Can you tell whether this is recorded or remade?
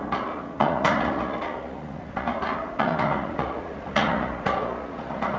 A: remade